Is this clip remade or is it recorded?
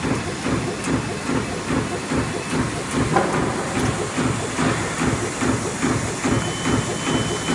recorded